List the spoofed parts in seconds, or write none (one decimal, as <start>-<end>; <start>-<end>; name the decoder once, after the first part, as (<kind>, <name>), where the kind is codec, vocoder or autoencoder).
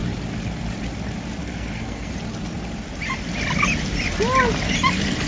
1.4-2.1 (codec, SNAC)